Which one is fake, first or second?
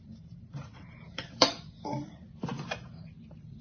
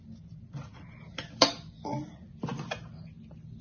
first